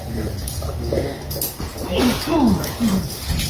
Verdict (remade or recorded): recorded